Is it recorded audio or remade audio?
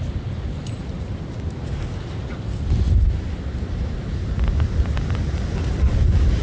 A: recorded